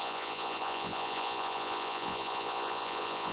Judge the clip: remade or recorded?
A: remade